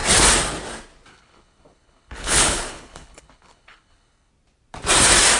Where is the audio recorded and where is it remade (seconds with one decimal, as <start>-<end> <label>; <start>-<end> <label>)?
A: 0.0-1.1 recorded; 1.1-4.3 remade; 4.3-5.4 recorded